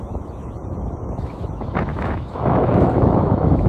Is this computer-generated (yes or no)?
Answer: yes